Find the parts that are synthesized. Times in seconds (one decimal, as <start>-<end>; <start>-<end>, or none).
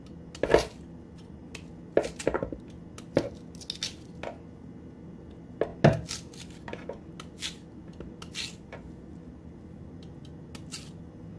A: none